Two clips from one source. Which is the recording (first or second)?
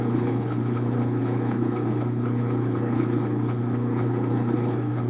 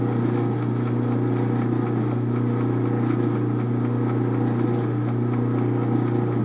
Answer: second